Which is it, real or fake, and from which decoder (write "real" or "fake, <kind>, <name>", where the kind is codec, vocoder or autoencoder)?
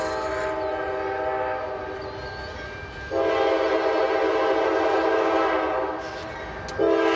real